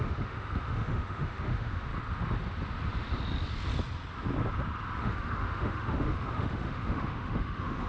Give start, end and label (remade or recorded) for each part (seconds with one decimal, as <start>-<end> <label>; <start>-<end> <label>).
0.0-1.9 remade; 1.9-5.0 recorded; 5.0-7.9 remade